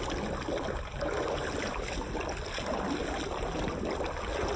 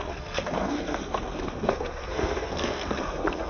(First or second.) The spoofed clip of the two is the second